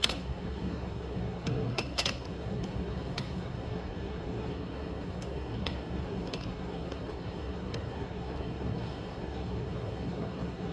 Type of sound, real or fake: fake